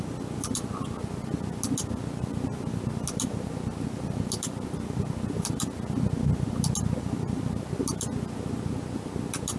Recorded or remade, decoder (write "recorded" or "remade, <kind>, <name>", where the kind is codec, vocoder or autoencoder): recorded